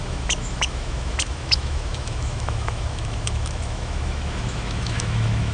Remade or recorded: remade